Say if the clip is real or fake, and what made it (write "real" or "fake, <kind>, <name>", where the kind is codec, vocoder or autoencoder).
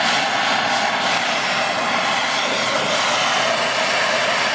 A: real